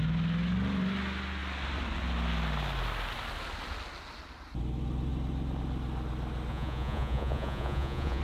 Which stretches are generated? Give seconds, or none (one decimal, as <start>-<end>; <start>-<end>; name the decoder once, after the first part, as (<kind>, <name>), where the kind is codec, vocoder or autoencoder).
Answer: 6.5-8.2 (vocoder, Vocos)